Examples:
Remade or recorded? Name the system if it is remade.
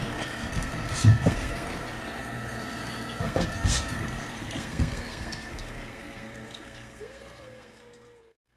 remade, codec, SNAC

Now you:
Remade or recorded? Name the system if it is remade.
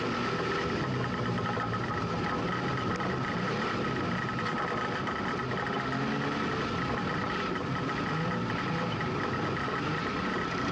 recorded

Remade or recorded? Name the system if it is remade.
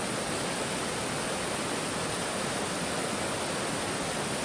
recorded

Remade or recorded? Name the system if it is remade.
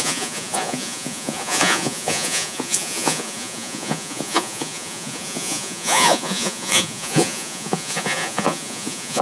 remade, vocoder, Vocos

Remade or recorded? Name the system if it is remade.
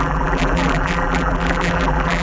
remade, vocoder, BigVGAN v2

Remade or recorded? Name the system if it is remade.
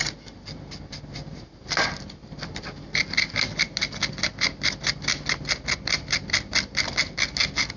recorded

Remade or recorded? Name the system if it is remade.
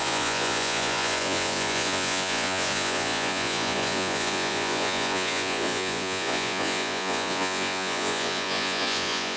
remade, vocoder, Vocos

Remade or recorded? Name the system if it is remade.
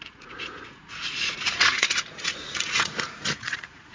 remade, vocoder, Vocos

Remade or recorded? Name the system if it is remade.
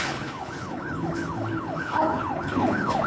remade, codec, HILCodec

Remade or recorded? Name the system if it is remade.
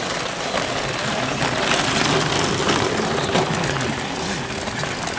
recorded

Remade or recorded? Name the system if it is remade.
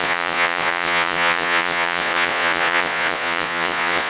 remade, vocoder, Vocos